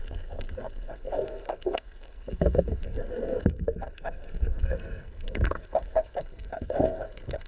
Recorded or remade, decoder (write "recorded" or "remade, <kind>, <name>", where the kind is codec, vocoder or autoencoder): remade, codec, SNAC